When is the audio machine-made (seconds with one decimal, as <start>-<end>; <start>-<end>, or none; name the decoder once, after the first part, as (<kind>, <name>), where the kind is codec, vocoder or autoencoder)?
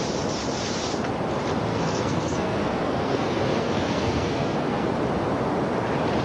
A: 1.7-4.9 (codec, SNAC)